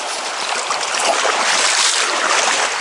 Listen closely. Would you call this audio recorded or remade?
recorded